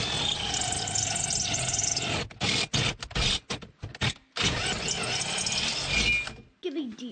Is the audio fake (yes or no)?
no